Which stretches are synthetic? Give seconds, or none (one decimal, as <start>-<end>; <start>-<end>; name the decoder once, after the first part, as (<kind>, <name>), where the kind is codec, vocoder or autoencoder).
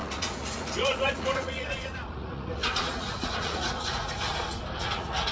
0.0-4.3 (vocoder, Vocos); 4.8-5.3